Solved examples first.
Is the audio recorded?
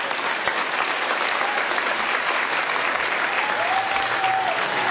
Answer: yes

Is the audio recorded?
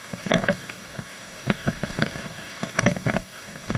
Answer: no